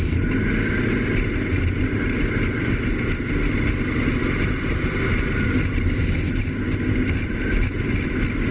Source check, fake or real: real